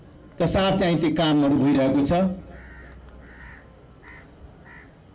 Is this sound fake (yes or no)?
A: no